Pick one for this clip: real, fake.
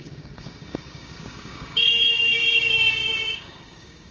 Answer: fake